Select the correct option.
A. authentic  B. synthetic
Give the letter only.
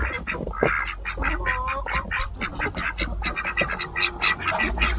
A